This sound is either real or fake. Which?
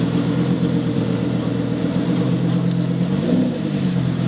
fake